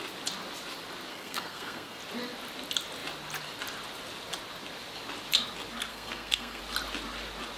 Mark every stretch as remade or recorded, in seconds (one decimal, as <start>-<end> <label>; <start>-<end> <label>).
0.0-1.1 recorded; 1.1-2.0 remade; 2.0-5.9 recorded; 5.9-6.6 remade; 6.6-7.6 recorded